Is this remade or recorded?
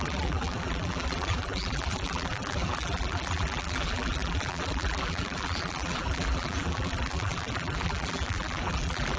remade